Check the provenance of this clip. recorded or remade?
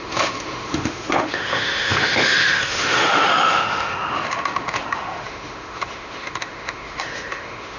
remade